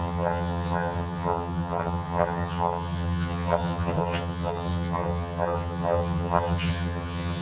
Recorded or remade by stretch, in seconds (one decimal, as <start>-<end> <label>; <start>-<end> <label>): 0.0-7.4 remade